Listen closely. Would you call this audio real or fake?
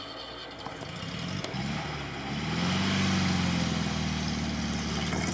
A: real